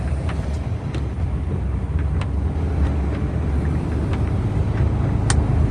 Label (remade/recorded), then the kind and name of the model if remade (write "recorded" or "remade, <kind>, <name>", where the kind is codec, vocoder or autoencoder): recorded